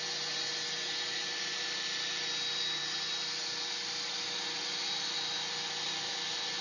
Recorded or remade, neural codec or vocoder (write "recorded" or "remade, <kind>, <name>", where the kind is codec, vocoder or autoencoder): recorded